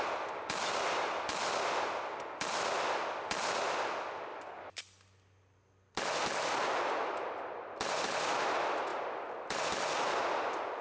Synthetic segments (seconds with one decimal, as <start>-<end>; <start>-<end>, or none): 4.3-4.8; 8.9-9.6